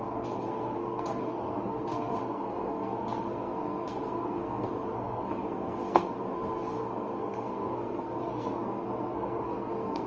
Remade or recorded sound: remade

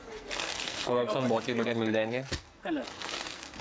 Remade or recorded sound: remade